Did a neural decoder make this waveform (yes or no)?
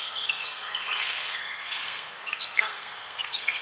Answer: yes